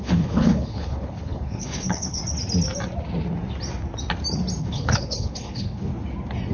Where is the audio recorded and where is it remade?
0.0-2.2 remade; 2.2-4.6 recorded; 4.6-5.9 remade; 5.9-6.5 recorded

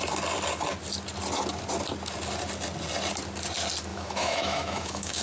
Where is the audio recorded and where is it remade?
0.0-3.9 recorded; 3.9-5.2 remade